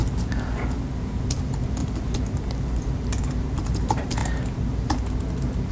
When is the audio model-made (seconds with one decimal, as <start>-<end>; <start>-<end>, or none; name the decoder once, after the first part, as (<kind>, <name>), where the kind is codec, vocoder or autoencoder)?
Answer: 1.4-1.8 (vocoder, BigVGAN v2); 3.6-4.2